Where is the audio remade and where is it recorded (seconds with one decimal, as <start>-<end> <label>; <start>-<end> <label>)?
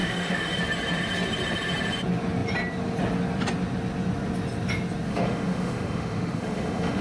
0.0-0.6 remade; 0.6-5.1 recorded; 5.1-7.0 remade